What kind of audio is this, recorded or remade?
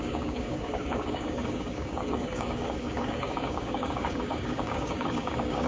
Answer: remade